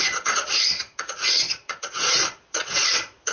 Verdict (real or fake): fake